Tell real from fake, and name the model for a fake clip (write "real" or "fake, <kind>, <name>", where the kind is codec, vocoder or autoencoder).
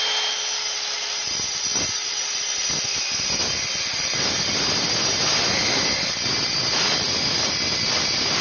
real